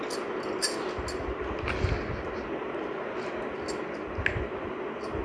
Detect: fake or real real